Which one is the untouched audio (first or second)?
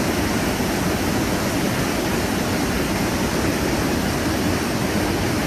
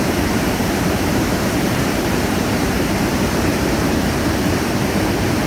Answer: first